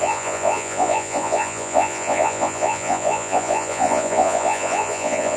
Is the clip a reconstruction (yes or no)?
yes